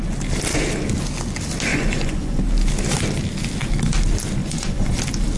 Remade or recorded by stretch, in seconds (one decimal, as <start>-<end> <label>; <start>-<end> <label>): 0.0-1.7 recorded; 1.7-2.4 remade; 2.4-4.4 recorded; 4.4-5.0 remade; 5.0-5.4 recorded